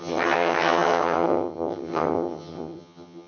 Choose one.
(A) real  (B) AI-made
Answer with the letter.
B